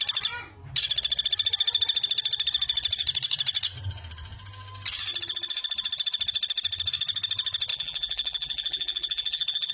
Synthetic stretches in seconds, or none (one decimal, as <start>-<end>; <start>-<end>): 7.7-9.7